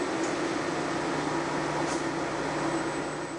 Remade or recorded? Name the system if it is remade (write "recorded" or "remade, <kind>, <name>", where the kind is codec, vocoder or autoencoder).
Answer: recorded